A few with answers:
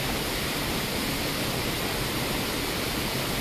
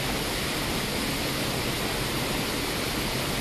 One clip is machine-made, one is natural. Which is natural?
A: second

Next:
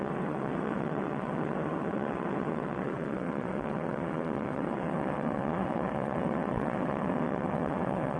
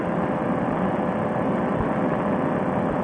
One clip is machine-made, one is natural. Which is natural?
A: second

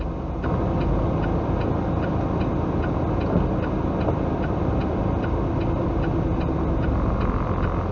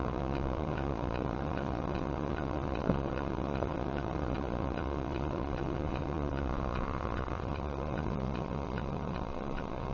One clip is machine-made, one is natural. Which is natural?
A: first